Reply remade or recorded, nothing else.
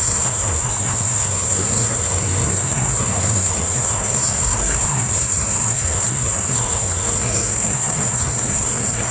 remade